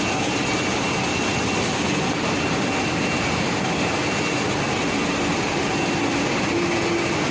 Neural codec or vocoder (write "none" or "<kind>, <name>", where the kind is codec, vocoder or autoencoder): none